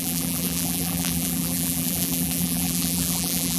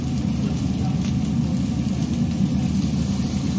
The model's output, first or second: first